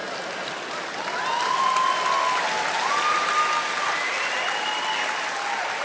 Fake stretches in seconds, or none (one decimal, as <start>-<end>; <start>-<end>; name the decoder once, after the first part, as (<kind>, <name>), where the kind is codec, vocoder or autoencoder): none